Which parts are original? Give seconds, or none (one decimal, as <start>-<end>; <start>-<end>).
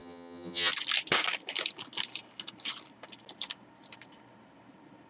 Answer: 0.7-5.1